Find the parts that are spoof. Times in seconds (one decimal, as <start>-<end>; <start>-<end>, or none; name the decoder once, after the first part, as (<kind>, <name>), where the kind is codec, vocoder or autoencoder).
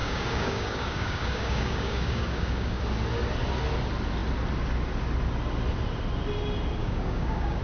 0.0-2.8 (codec, DAC); 6.8-7.6